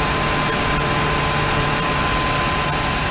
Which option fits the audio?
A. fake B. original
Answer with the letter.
B